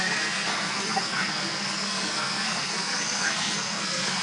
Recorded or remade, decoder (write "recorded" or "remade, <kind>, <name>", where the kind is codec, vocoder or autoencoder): remade, codec, SNAC